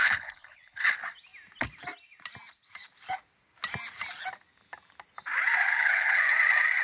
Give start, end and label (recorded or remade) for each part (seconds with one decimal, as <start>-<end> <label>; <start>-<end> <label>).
0.0-0.8 remade; 0.8-5.7 recorded; 5.7-6.3 remade; 6.3-6.8 recorded